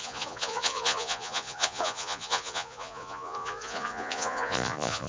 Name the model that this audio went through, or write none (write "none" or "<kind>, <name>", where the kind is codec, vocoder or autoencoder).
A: vocoder, Vocos